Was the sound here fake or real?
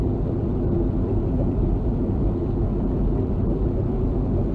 fake